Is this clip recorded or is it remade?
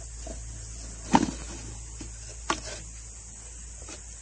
recorded